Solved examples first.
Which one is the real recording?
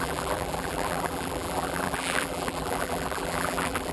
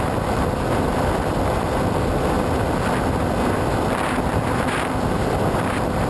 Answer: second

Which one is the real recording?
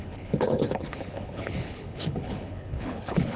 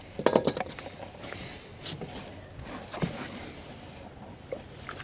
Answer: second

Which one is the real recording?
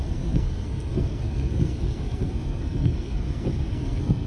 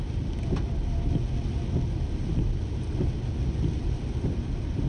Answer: second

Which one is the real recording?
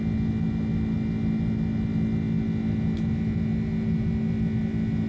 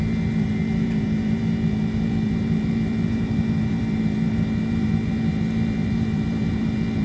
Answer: first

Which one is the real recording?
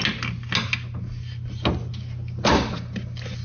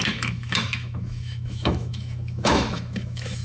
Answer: first